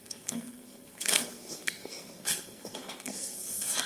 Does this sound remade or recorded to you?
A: remade